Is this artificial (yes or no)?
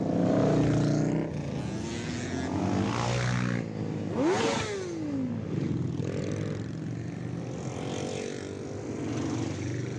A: no